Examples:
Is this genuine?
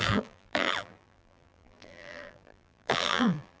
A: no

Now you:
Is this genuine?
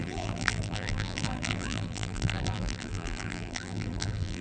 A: no